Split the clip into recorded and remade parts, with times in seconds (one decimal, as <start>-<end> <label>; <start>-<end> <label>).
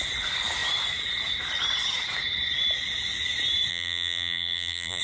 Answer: 0.0-3.7 recorded; 3.7-5.0 remade